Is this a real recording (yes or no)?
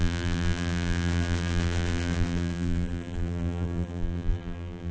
no